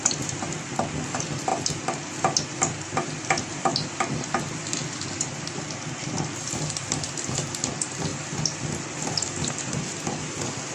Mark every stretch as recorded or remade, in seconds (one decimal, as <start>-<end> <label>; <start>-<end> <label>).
0.0-8.1 recorded; 8.1-9.6 remade; 9.6-10.7 recorded